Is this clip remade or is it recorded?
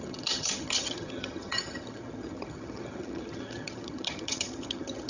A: remade